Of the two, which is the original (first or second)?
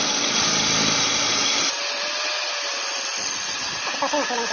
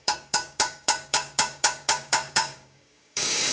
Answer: first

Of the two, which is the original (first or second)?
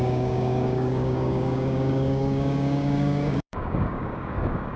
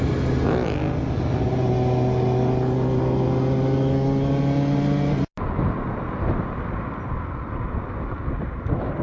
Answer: second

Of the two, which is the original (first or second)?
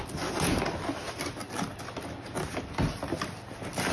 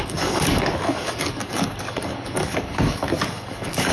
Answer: first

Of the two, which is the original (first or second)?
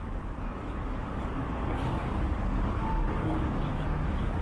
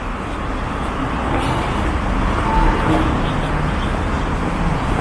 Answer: second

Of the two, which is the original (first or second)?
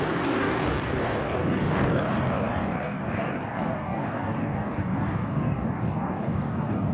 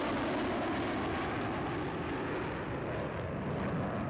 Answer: second